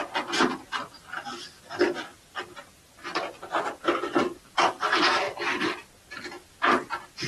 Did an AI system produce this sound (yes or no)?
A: no